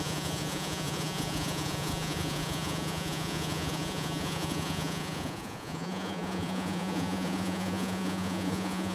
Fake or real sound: fake